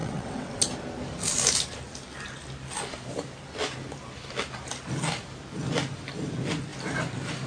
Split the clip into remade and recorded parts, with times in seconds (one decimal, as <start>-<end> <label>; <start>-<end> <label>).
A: 0.0-0.6 remade; 0.6-7.5 recorded